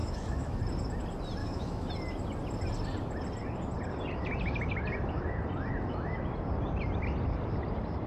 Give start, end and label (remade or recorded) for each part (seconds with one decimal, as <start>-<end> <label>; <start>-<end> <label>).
0.0-0.6 remade; 0.6-1.4 recorded; 1.4-1.9 remade; 1.9-8.1 recorded